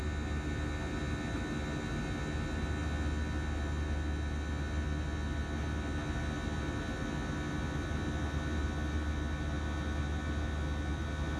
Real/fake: real